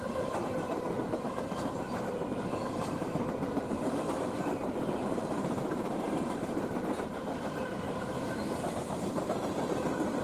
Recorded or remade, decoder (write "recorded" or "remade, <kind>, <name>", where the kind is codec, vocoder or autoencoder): remade, vocoder, BigVGAN v2